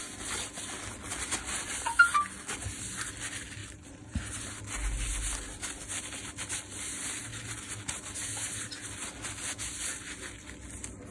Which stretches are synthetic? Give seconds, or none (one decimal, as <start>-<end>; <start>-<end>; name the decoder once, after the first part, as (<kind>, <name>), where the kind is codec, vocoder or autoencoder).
3.6-4.6 (vocoder, BigVGAN v2)